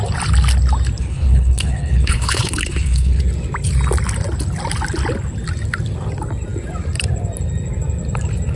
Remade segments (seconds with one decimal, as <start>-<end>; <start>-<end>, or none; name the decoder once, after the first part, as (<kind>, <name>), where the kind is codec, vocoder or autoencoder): 1.0-3.2 (codec, HILCodec)